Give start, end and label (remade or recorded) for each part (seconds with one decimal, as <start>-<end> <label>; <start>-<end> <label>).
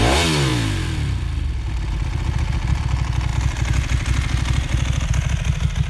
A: 0.0-5.9 recorded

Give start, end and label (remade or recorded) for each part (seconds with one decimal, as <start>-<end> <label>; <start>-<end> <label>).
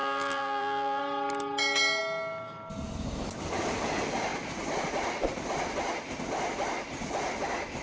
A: 0.0-1.0 remade; 1.0-7.8 recorded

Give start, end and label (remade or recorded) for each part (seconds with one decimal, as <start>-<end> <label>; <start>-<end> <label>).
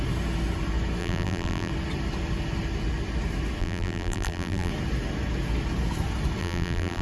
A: 0.0-1.0 recorded; 1.0-1.7 remade; 1.7-3.6 recorded; 3.6-4.7 remade; 4.7-6.4 recorded; 6.4-7.0 remade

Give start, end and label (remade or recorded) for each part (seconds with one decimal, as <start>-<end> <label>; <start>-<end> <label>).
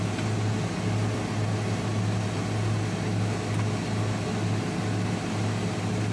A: 0.0-6.1 recorded